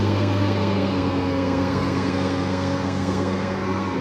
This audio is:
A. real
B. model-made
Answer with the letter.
B